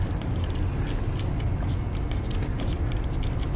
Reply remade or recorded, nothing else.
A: recorded